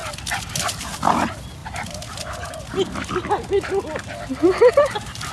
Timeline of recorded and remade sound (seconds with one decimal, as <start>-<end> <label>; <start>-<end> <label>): 0.0-5.3 recorded